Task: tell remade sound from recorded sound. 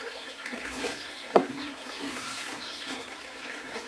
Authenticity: remade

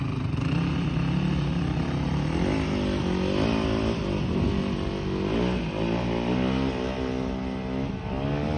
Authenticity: recorded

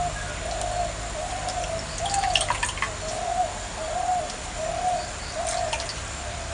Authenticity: recorded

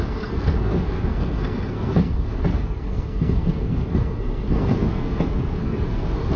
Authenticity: remade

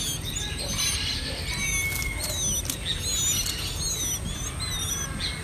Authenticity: recorded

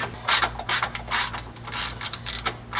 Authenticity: recorded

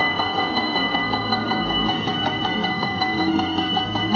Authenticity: remade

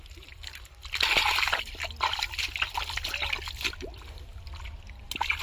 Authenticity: recorded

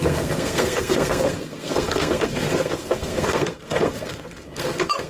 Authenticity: remade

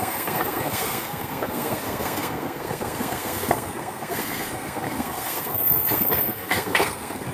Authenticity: remade